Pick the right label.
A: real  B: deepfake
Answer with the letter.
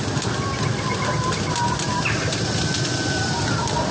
A